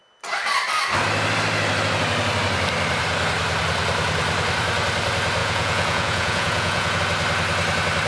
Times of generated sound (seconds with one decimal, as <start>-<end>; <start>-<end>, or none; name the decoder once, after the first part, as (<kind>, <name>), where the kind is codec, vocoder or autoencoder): 5.4-7.0 (vocoder, Vocos)

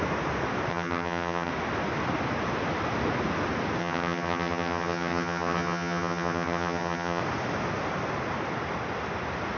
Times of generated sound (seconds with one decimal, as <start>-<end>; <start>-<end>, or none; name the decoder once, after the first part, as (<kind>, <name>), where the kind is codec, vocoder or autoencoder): 0.7-1.5 (vocoder, HiFi-GAN); 3.8-7.2